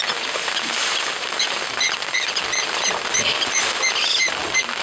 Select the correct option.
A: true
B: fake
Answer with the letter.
A